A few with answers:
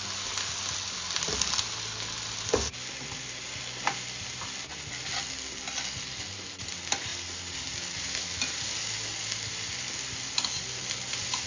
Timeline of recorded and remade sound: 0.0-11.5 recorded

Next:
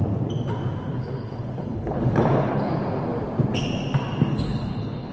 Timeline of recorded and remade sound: 0.0-0.9 recorded; 0.9-2.7 remade; 2.7-4.3 recorded; 4.3-5.1 remade

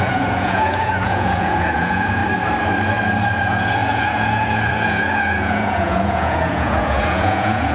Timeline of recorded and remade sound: 0.0-2.2 remade; 2.2-3.4 recorded; 3.4-7.7 remade

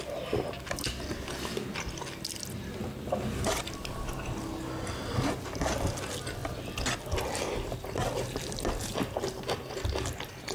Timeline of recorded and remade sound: 0.0-10.5 recorded